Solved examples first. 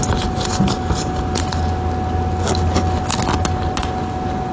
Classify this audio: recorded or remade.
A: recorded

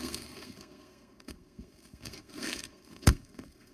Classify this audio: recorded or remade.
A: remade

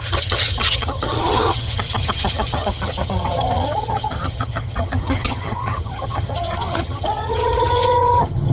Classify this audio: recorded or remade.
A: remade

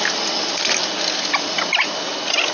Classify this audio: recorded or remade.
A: recorded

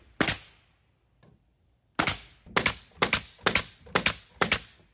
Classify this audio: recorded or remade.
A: recorded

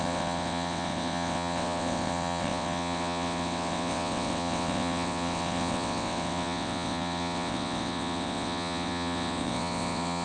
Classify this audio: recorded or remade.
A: remade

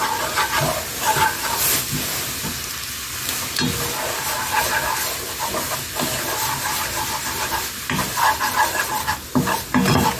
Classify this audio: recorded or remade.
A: recorded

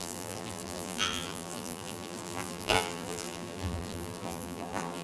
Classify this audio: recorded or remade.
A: remade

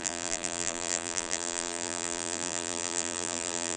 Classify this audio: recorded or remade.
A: remade